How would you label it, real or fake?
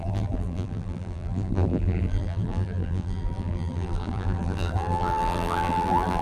fake